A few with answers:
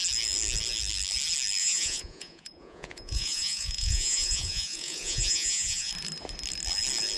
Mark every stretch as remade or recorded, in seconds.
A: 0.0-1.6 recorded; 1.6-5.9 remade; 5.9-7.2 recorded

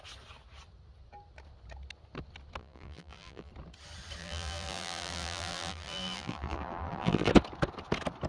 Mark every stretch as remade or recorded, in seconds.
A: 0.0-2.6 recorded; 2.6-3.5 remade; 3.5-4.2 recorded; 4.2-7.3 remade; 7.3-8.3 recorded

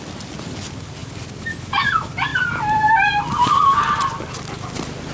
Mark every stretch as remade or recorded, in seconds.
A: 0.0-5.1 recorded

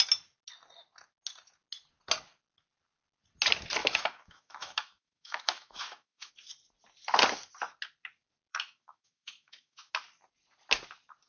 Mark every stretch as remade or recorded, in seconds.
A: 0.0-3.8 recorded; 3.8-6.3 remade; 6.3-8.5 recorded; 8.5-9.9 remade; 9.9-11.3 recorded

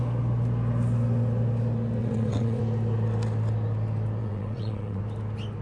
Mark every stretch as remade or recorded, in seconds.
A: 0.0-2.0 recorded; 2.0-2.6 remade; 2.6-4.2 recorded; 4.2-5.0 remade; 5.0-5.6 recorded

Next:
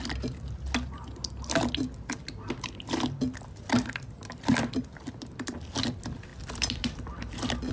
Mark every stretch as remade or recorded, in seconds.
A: 0.0-6.3 recorded; 6.3-7.7 remade